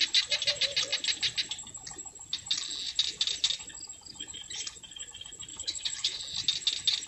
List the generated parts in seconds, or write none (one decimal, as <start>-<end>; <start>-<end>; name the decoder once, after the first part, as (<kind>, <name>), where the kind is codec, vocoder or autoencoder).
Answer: 5.5-6.2 (codec, HILCodec)